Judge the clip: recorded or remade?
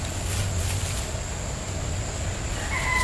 recorded